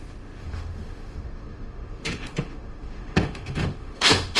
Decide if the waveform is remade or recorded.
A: remade